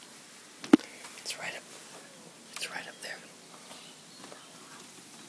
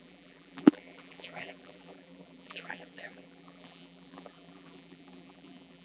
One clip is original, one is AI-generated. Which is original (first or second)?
first